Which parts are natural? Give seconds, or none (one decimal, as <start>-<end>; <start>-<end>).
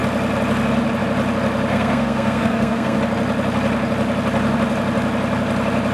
0.0-1.7; 3.0-5.9